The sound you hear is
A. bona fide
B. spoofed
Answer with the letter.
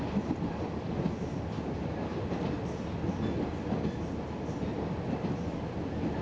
A